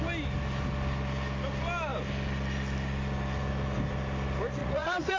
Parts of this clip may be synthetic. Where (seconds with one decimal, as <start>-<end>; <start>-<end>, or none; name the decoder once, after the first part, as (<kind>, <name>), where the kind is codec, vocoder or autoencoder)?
4.6-5.2 (vocoder, Vocos)